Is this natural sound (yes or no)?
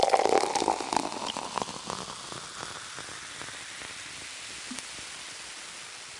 yes